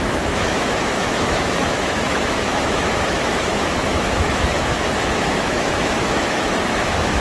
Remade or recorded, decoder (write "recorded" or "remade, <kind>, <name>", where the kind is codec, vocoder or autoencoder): remade, autoencoder, DAC-VAE